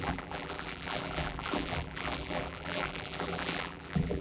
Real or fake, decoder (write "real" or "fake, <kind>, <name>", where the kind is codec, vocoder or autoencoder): fake, vocoder, BigVGAN v2